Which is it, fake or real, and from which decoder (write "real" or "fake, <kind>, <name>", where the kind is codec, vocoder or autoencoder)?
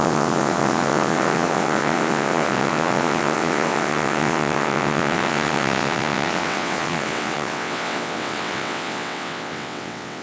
fake, vocoder, WaveNeXt